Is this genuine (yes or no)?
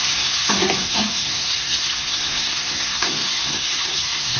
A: no